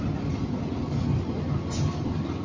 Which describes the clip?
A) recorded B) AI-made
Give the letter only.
A